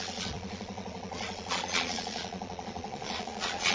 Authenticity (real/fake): fake